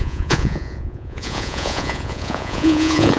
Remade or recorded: remade